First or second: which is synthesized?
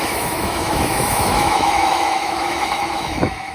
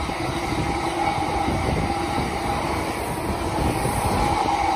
first